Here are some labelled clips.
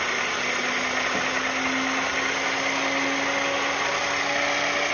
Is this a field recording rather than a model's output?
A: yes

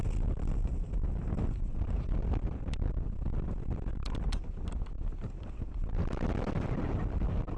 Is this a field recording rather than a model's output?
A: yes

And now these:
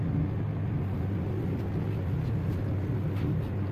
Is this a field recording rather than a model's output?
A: yes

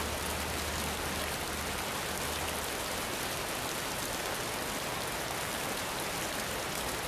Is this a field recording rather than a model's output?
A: yes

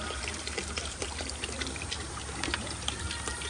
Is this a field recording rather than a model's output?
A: no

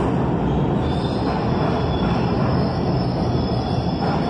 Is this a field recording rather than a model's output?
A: yes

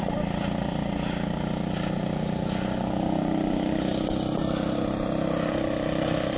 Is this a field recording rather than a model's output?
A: yes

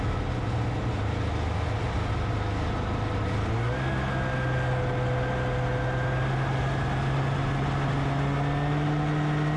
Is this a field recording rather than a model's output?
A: yes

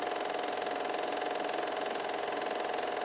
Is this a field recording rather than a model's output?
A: yes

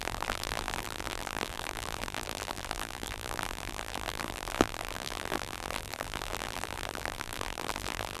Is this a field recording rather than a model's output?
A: no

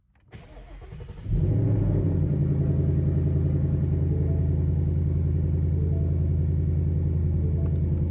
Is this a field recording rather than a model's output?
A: yes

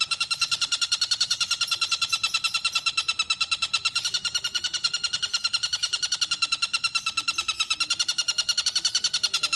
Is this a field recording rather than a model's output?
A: yes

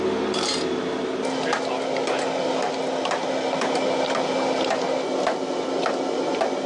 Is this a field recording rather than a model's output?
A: yes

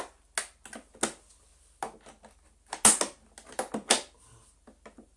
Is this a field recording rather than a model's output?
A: yes